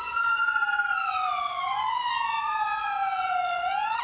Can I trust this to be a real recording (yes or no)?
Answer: no